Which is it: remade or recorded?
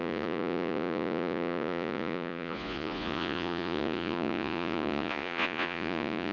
remade